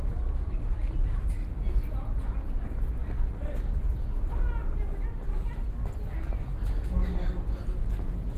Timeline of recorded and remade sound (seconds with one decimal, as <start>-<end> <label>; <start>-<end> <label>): 0.0-8.4 recorded